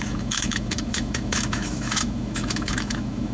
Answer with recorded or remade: remade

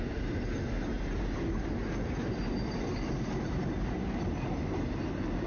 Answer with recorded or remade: recorded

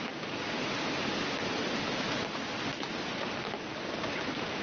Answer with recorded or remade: recorded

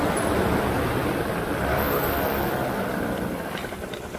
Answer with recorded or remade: remade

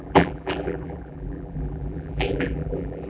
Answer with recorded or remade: remade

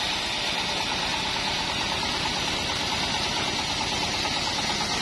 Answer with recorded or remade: recorded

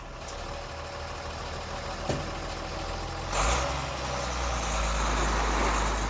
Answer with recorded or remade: recorded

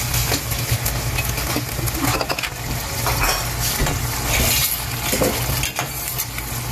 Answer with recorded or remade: recorded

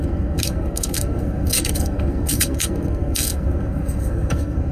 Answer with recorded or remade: remade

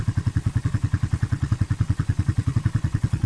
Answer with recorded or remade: remade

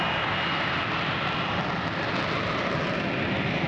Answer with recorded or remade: recorded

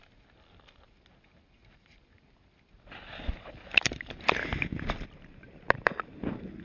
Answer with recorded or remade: recorded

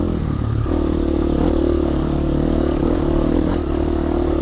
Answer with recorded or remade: remade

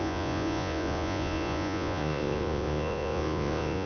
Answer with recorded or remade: remade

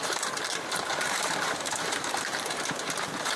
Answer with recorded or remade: remade